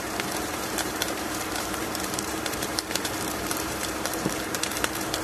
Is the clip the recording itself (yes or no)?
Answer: no